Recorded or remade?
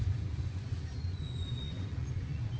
remade